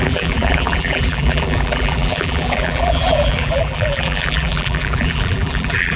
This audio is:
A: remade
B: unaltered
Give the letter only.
A